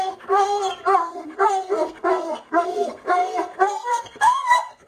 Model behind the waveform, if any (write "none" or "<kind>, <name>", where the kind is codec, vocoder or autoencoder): codec, SNAC